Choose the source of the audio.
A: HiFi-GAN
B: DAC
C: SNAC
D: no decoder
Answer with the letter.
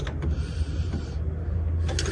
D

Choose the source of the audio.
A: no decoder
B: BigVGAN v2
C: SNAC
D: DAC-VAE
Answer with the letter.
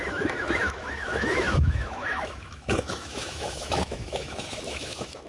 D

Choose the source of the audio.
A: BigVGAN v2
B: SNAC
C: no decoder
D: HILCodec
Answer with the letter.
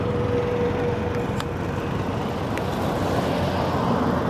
C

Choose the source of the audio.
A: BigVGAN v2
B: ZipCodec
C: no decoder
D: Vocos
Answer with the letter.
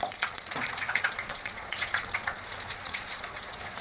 D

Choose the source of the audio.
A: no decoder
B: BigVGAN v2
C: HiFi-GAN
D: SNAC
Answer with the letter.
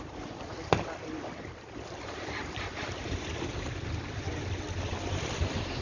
B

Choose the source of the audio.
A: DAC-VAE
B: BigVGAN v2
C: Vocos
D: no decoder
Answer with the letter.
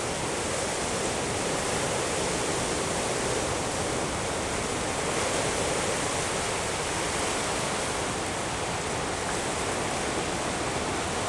D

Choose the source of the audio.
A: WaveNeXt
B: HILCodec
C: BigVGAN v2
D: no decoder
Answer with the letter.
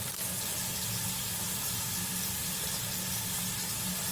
D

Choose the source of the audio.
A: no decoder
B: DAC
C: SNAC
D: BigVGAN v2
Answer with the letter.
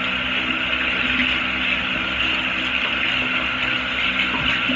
A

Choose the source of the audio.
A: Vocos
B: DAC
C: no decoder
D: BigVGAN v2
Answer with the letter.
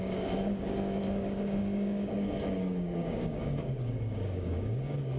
B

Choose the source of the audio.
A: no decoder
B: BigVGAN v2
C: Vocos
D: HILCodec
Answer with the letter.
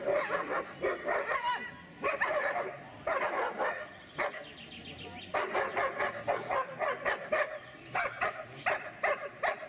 A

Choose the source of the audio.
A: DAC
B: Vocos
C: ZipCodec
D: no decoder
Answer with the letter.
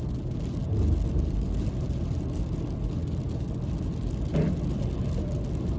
D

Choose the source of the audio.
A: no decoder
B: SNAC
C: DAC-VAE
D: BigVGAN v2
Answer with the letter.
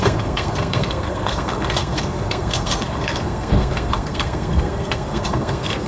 B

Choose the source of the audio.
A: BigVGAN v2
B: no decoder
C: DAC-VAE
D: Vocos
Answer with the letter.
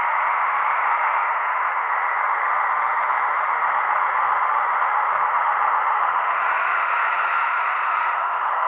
C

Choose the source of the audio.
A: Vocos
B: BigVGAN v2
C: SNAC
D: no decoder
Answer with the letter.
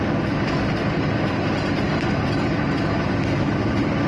D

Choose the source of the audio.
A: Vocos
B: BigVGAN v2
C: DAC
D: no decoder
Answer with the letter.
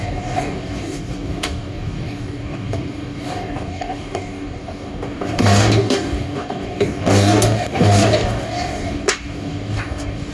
C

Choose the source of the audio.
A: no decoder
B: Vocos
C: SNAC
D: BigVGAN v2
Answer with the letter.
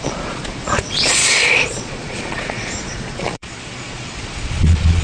B